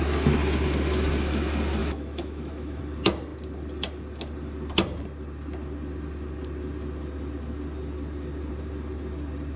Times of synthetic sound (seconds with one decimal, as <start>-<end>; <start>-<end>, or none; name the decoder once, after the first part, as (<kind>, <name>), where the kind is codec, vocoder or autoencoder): 1.8-2.8 (autoencoder, DAC-VAE)